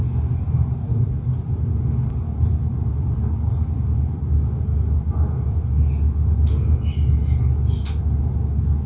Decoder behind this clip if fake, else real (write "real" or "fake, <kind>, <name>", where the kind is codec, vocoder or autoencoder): real